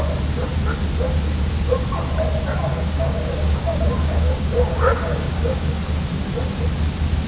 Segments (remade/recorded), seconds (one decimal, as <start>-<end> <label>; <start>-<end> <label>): 0.0-2.7 recorded; 2.7-5.8 remade; 5.8-7.3 recorded